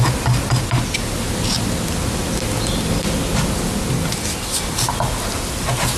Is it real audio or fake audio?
real